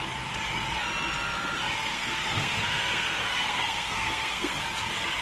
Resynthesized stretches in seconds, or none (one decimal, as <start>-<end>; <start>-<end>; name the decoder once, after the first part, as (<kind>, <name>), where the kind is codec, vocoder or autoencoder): 1.9-4.6 (codec, SNAC)